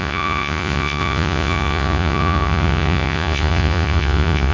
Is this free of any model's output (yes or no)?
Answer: no